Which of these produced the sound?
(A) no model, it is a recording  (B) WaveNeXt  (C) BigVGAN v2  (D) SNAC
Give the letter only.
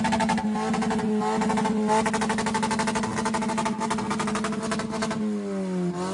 A